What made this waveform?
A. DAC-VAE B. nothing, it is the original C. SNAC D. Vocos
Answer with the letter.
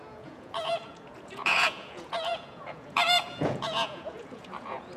D